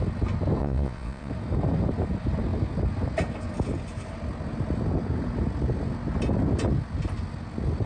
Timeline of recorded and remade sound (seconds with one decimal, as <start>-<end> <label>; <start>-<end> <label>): 0.0-0.6 recorded; 0.6-1.3 remade; 1.3-7.9 recorded